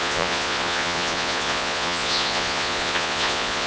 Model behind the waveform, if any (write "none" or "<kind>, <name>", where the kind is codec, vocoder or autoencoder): vocoder, Vocos